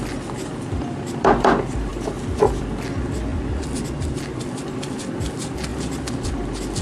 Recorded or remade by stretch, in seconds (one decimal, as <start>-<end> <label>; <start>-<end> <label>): 0.0-3.3 recorded; 3.3-4.2 remade; 4.2-6.8 recorded

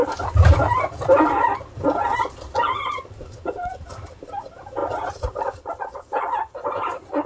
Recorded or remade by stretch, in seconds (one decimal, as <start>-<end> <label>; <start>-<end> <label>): 0.0-4.8 recorded; 4.8-5.8 remade; 5.8-7.3 recorded

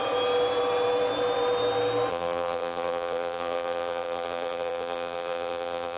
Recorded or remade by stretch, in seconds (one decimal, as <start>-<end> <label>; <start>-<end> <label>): 0.0-2.1 recorded; 2.1-6.0 remade

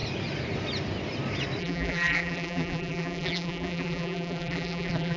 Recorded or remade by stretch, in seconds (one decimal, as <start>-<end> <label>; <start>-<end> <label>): 0.0-1.6 recorded; 1.6-5.2 remade

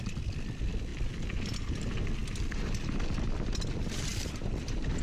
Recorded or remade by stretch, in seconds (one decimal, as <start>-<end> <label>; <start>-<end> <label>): 0.0-5.0 recorded

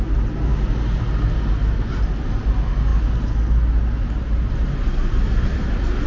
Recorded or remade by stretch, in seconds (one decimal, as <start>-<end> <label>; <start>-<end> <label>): 0.0-6.1 recorded

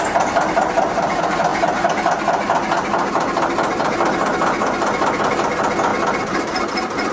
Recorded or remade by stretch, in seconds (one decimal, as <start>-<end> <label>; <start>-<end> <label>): 0.0-5.9 recorded; 5.9-7.1 remade

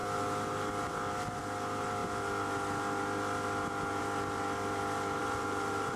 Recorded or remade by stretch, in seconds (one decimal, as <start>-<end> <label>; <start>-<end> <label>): 0.0-5.2 recorded; 5.2-6.0 remade